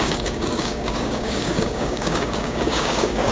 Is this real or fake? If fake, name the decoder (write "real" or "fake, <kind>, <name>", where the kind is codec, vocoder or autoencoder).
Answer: fake, codec, DAC